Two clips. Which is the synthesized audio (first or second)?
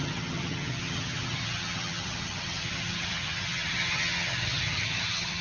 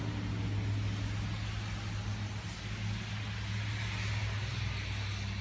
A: first